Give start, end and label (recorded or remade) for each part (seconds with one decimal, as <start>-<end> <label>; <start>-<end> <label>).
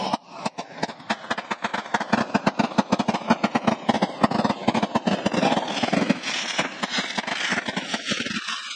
0.0-8.8 recorded